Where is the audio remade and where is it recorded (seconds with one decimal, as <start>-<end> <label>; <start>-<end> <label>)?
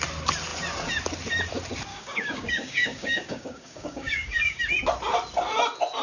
0.0-1.9 recorded; 1.9-4.6 remade; 4.6-6.0 recorded